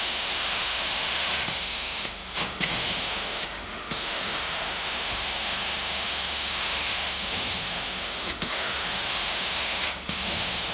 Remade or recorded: remade